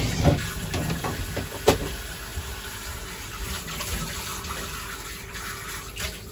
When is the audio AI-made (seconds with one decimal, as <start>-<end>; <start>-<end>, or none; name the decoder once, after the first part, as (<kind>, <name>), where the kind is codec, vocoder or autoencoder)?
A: 2.3-3.6 (vocoder, BigVGAN v2)